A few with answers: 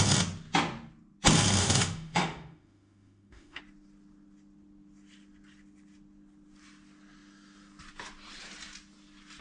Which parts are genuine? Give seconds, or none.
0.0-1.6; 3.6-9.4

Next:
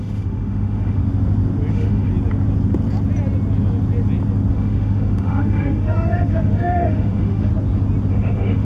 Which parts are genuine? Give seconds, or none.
1.0-1.7; 2.1-4.5; 7.5-8.1

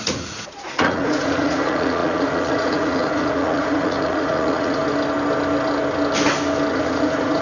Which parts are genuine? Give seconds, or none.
4.8-6.7

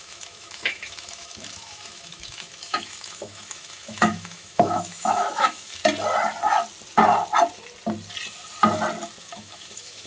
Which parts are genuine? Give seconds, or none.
5.8-9.2

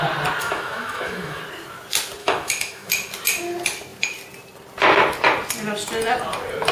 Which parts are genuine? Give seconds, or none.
0.0-0.4; 1.4-2.2; 2.9-6.7

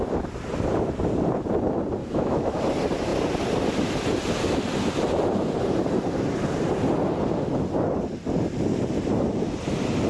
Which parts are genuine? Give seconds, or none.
0.0-2.0; 2.6-10.1

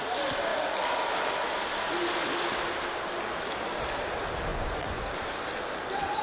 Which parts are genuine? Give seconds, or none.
0.0-4.5; 5.0-6.2

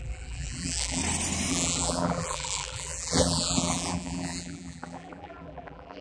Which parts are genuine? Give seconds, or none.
1.0-1.5